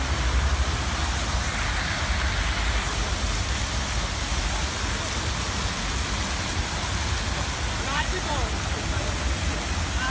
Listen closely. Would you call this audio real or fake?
real